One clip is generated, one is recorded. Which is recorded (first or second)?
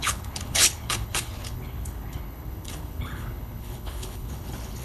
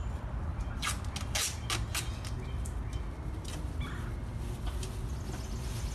second